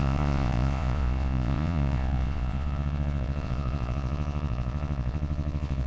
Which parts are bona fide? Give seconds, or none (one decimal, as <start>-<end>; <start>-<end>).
none